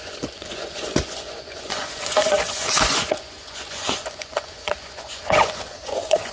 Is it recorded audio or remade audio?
remade